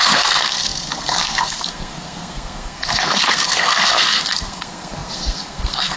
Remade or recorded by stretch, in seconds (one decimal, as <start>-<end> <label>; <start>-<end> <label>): 0.0-6.0 remade